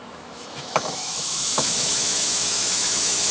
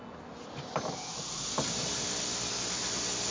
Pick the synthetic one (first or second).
first